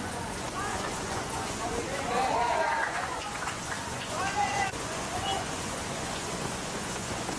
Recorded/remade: remade